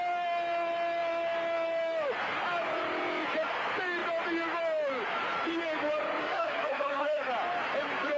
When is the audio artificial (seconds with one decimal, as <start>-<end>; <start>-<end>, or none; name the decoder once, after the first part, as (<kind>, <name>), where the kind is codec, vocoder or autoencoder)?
6.2-7.3 (codec, SNAC)